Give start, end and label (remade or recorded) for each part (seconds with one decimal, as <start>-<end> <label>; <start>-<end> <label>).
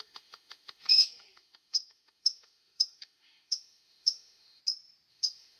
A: 0.0-4.6 remade; 4.6-5.1 recorded; 5.1-5.6 remade